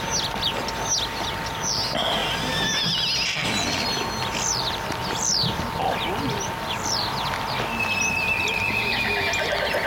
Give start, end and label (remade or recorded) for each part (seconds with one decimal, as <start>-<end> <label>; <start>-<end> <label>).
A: 0.0-2.2 recorded; 2.2-3.8 remade; 3.8-9.9 recorded